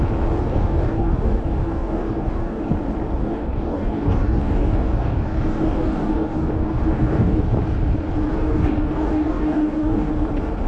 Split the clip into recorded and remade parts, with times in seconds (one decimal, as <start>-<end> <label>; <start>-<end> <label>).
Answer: 0.0-0.4 recorded; 0.4-2.6 remade; 2.6-3.2 recorded; 3.2-7.4 remade; 7.4-8.3 recorded; 8.3-10.1 remade; 10.1-10.7 recorded